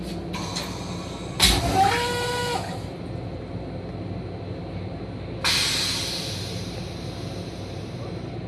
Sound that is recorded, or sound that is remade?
recorded